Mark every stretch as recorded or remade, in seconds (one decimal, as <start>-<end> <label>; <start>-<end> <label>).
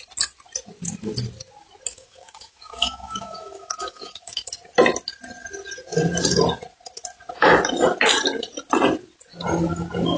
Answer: 0.0-1.9 recorded; 1.9-4.5 remade; 4.5-10.2 recorded